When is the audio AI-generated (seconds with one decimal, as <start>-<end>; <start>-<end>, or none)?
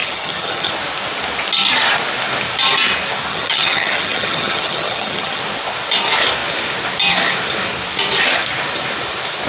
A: 0.0-0.7; 3.3-5.4